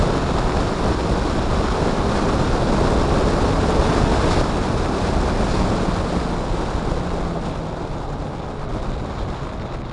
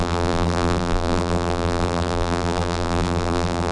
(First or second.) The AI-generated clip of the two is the second